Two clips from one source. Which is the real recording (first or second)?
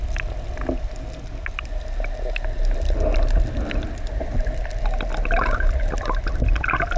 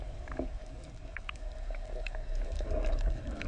first